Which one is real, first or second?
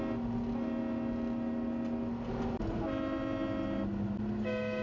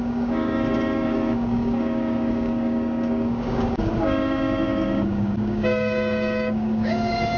first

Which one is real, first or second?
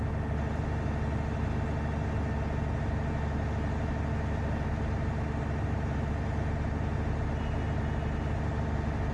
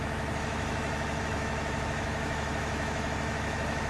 first